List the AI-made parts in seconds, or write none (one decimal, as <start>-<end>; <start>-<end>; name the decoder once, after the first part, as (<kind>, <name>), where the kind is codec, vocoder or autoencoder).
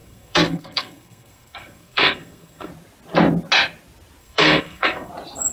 0.0-2.7 (codec, SNAC); 4.2-5.1